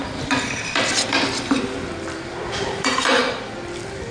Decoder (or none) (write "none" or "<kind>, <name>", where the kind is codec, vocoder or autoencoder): vocoder, BigVGAN v2